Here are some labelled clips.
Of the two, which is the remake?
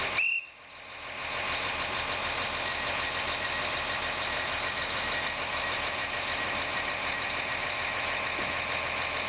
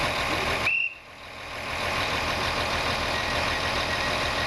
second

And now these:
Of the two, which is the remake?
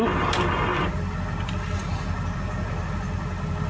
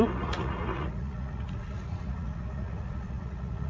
second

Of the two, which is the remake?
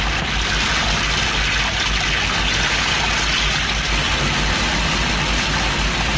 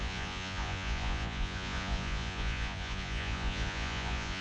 second